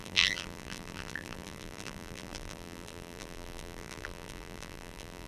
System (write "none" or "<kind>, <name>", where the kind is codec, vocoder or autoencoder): vocoder, BigVGAN v2